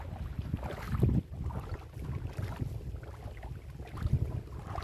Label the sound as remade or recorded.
recorded